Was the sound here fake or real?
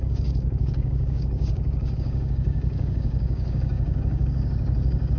fake